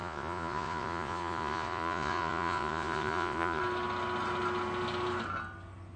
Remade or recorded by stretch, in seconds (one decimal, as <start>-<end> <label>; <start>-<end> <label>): 0.0-3.6 remade; 3.6-6.0 recorded